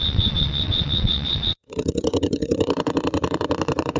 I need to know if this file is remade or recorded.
remade